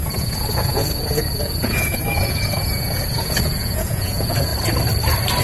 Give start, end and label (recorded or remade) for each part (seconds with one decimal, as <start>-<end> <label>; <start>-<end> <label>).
0.0-4.5 remade; 4.5-5.4 recorded